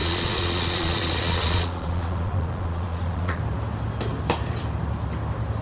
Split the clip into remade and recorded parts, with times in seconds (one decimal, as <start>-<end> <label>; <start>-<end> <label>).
0.0-3.4 remade; 3.4-5.6 recorded